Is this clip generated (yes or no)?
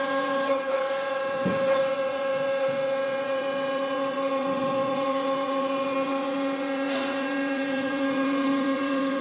yes